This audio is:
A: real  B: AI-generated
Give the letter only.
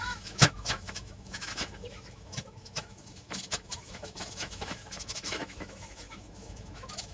B